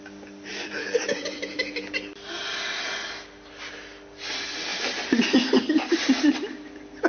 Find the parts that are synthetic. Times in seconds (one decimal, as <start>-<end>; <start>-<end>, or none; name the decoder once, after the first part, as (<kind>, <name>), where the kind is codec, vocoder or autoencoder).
0.5-1.7 (vocoder, BigVGAN v2)